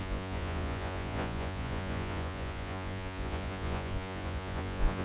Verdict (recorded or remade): remade